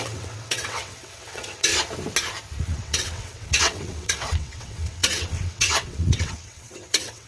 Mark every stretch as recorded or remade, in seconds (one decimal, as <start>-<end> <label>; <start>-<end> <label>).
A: 0.0-1.7 remade; 1.7-2.6 recorded; 2.6-7.3 remade